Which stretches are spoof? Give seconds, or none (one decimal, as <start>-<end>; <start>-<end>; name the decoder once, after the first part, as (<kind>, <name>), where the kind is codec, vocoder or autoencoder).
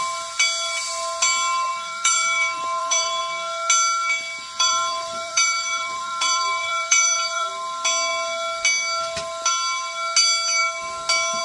1.7-3.2 (vocoder, BigVGAN v2); 4.5-7.5